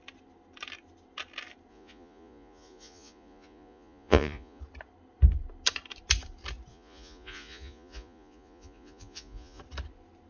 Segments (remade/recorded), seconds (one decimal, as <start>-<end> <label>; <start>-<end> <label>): 0.0-1.7 recorded; 1.7-4.6 remade; 4.6-6.7 recorded; 6.7-9.6 remade; 9.6-10.3 recorded